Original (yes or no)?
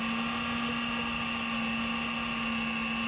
yes